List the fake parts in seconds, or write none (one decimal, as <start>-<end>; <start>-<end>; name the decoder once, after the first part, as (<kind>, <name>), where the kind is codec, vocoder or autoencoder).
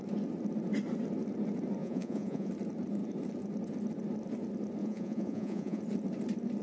1.8-2.5 (vocoder, Vocos); 4.8-5.8